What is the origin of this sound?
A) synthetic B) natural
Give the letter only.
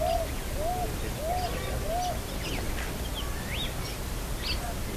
B